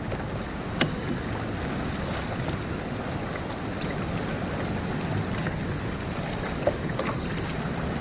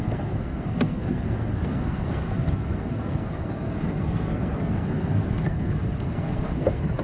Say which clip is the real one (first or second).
first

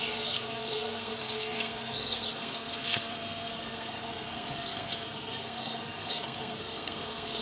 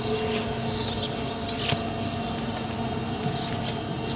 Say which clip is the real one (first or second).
second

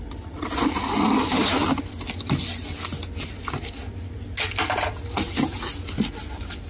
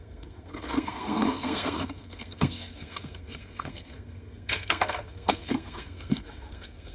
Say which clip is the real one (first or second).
first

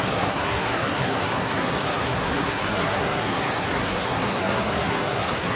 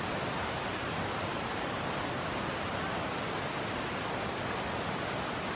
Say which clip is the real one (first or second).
second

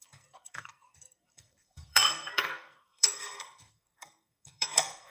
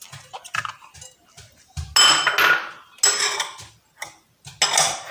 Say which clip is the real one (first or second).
second